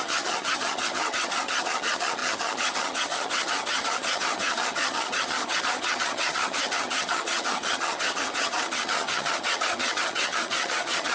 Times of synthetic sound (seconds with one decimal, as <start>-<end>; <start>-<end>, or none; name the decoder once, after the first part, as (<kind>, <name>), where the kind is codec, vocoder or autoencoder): 0.0-11.1 (vocoder, HiFi-GAN)